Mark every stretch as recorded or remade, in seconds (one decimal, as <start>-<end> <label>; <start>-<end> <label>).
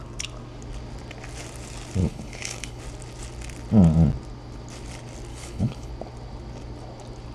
0.0-2.0 recorded; 2.0-2.8 remade; 2.8-5.3 recorded; 5.3-5.9 remade; 5.9-7.3 recorded